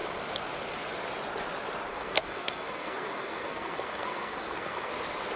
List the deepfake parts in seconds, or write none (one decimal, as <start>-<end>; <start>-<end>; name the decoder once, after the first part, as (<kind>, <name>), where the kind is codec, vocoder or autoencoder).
1.9-4.9 (codec, SNAC)